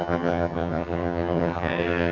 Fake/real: fake